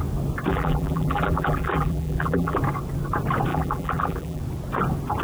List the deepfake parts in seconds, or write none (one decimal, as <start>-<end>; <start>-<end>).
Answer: 0.5-2.6; 3.5-4.4